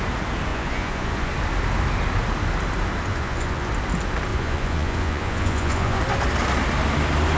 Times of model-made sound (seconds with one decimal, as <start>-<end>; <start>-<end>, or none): 0.5-1.3; 3.1-3.7; 4.3-6.0